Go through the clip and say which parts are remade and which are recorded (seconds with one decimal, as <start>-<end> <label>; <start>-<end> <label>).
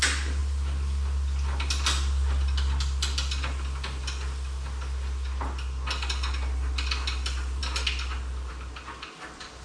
0.0-9.6 recorded